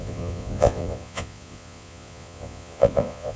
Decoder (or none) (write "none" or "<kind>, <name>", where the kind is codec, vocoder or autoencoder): vocoder, Vocos